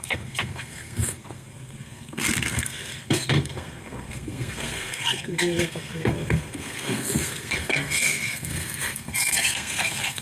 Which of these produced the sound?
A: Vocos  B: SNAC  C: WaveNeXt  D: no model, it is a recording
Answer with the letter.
B